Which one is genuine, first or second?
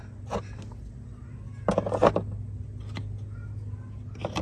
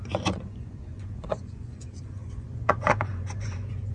first